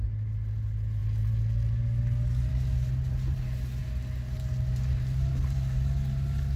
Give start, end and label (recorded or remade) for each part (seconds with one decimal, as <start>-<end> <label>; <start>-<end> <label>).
0.0-6.6 recorded